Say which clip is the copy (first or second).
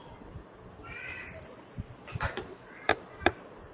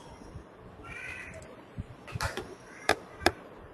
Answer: second